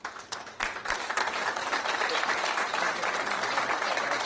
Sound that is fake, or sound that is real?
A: real